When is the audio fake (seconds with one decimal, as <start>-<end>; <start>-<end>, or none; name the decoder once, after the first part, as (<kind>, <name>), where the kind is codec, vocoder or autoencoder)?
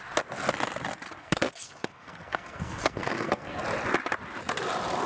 1.2-3.6 (codec, SNAC)